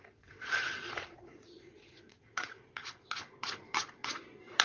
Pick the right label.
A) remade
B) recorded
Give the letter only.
A